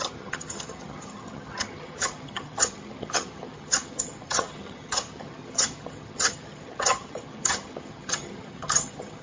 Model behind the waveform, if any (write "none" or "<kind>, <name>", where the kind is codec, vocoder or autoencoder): vocoder, HiFi-GAN